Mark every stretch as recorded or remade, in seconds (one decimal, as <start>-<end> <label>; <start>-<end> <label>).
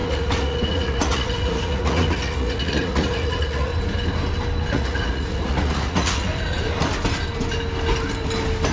0.0-3.7 remade; 3.7-4.7 recorded; 4.7-6.3 remade; 6.3-8.7 recorded